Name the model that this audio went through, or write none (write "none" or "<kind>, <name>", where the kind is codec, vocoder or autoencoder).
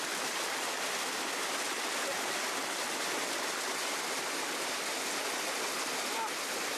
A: none